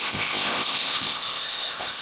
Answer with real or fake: fake